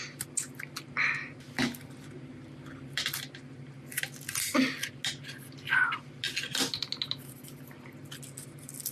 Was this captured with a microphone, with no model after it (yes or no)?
yes